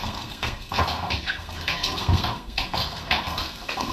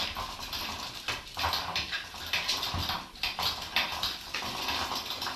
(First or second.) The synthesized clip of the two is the first